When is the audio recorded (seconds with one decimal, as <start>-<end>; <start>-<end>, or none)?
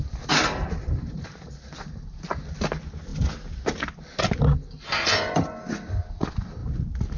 0.0-7.2